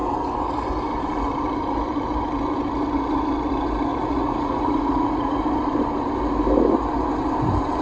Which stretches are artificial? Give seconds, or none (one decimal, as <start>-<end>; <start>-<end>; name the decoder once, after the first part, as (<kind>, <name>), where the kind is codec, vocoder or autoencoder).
3.9-5.4 (vocoder, Vocos)